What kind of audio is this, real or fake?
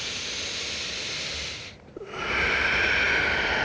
real